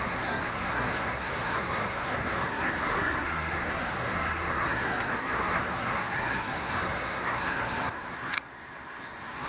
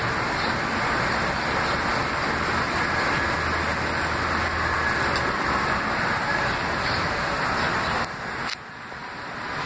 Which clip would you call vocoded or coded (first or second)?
first